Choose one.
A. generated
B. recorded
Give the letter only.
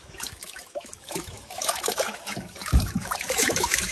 A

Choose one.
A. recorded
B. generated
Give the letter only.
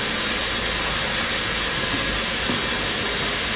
A